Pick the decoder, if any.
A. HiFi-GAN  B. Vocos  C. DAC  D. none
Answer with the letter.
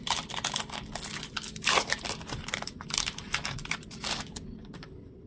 D